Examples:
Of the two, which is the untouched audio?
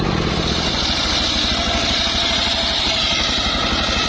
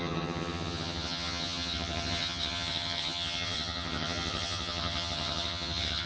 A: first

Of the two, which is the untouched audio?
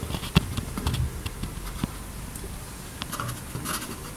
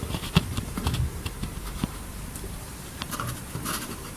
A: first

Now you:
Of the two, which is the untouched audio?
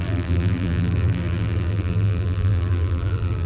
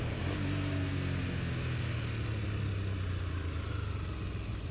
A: second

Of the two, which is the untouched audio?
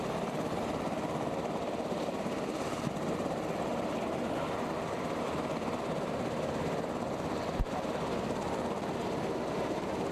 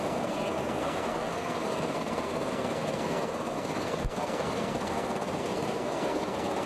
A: first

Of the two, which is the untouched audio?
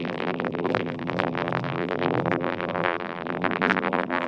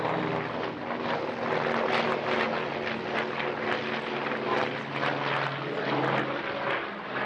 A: second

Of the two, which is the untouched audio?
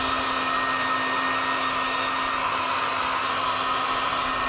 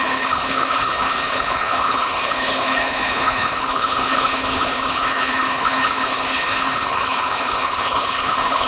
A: first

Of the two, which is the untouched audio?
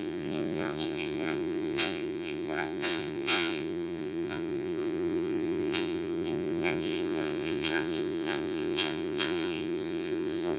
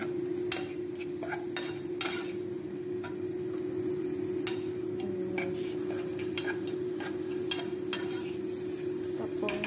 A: second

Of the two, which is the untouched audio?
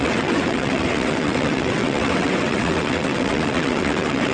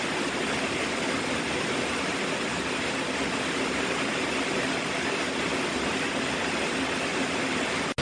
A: second